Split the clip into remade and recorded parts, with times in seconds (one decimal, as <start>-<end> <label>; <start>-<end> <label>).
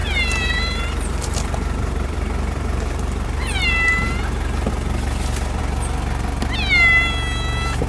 0.0-4.7 remade; 4.7-7.9 recorded